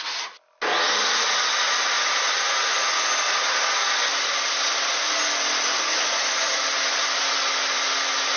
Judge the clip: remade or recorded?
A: recorded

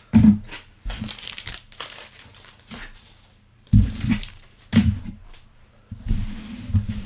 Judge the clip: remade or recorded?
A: remade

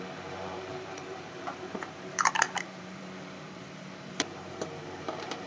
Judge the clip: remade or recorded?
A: remade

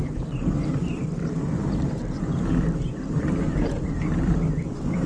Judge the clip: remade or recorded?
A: remade